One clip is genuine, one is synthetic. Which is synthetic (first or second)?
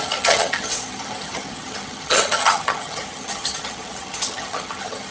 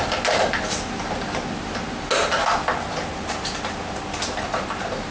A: first